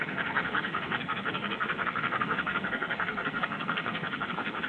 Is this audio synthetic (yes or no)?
yes